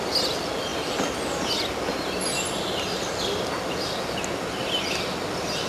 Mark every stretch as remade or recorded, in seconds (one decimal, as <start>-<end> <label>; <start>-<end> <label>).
0.0-5.7 recorded